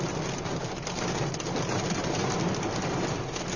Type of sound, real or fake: real